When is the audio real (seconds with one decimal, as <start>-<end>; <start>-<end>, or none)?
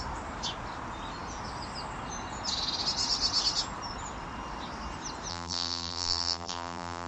0.0-5.3